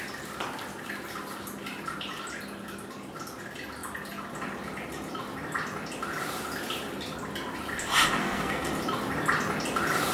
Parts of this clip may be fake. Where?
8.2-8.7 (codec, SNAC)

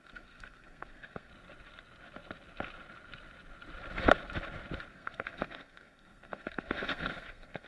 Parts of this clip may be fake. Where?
0.0-1.3 (codec, SNAC); 4.9-7.7

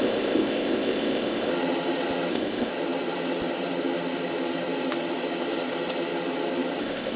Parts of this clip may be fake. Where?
0.0-1.5 (codec, ZipCodec); 2.3-2.7; 6.8-7.2

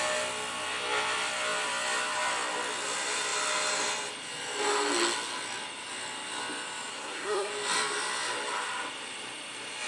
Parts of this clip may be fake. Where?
6.9-7.5 (codec, SNAC)

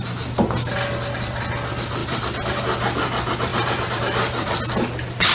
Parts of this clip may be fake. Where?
2.0-2.6 (vocoder, BigVGAN v2); 3.5-4.6

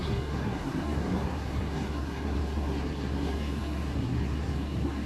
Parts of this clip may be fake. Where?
0.0-5.1 (codec, SNAC)

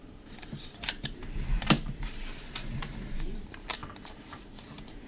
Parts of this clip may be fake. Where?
0.0-5.1 (vocoder, BigVGAN v2)